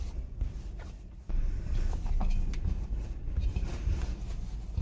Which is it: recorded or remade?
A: recorded